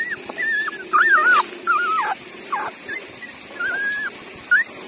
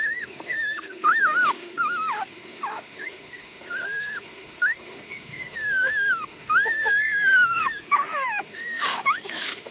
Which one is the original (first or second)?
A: first